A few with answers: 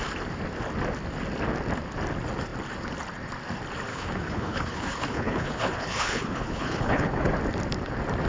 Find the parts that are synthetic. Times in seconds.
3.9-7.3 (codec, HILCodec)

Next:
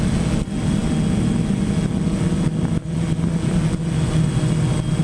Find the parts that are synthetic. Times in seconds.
none

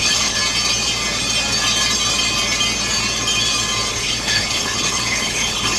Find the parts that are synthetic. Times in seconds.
0.0-0.4 (codec, HILCodec); 3.9-5.8